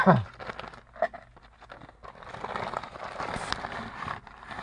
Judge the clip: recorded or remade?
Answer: recorded